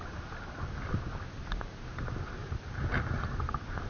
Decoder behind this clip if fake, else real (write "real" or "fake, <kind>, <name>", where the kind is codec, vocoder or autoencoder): real